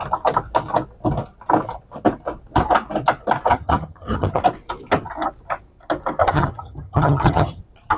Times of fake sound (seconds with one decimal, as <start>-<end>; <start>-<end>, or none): 3.5-4.4; 6.2-7.6